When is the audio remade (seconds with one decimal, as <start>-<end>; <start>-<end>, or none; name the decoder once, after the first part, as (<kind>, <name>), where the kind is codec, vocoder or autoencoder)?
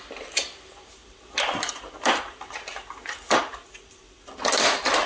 none